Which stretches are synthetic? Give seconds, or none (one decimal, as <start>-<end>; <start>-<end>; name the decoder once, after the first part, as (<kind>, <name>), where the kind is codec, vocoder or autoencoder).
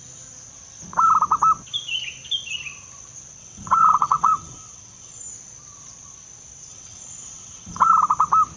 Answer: 3.4-5.2 (vocoder, WaveNeXt); 6.7-7.9